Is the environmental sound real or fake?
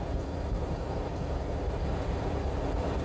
fake